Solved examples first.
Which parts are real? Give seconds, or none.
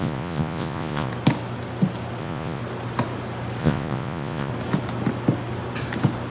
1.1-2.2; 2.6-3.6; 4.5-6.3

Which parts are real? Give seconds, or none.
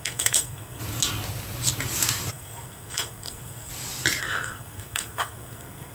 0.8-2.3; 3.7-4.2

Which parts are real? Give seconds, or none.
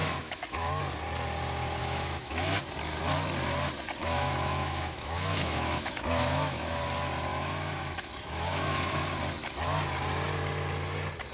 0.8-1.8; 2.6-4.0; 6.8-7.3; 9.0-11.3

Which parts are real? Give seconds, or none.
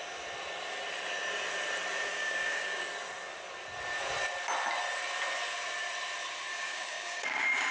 0.0-2.1; 2.8-6.5